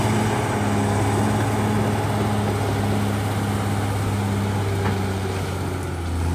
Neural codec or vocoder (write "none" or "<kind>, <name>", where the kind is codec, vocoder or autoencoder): none